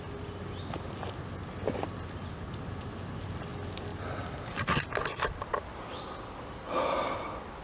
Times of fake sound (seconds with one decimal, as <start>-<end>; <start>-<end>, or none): none